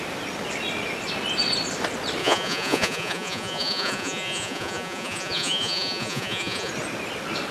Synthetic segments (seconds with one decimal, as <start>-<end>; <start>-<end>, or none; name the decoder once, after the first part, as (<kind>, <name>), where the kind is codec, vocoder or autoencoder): 2.2-6.7 (vocoder, Vocos)